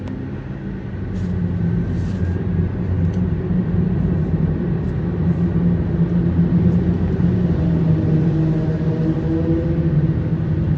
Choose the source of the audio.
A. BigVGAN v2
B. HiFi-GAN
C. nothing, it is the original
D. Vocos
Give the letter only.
C